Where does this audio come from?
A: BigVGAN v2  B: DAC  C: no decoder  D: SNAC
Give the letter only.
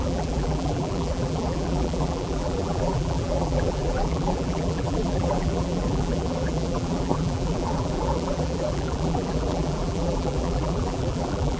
A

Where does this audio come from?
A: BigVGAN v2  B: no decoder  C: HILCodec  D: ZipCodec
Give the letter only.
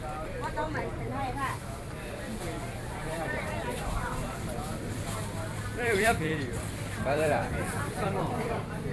A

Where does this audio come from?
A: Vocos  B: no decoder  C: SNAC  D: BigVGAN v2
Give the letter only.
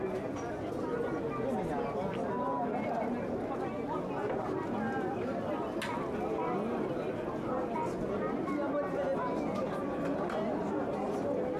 B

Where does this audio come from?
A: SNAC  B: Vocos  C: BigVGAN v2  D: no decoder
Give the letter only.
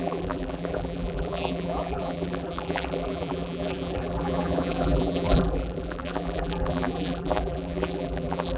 C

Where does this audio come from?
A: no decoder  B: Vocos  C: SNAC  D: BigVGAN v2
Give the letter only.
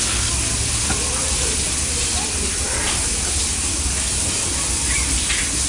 A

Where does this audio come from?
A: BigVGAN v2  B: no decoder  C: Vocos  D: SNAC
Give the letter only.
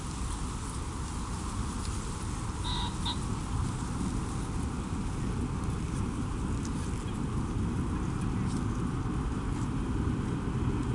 B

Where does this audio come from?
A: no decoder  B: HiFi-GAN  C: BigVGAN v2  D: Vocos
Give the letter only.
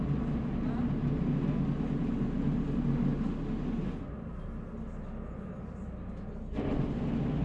A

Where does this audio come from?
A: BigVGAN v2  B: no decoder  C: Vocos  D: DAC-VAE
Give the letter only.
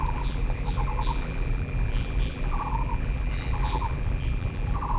A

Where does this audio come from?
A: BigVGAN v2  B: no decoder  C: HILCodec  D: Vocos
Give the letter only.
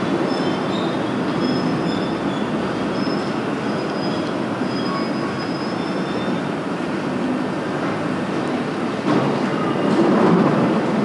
B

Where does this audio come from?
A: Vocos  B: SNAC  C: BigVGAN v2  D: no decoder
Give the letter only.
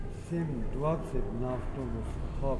D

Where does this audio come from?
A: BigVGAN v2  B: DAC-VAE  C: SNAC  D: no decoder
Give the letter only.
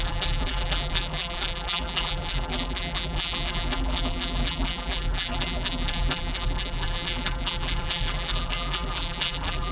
A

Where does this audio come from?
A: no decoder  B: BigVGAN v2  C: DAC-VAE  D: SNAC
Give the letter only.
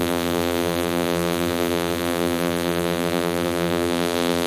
B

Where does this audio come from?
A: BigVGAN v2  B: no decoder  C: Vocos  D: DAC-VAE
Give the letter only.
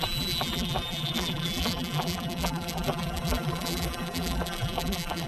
A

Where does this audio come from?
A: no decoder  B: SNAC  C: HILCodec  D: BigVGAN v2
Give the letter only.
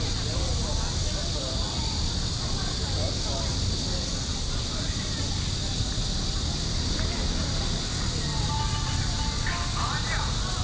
A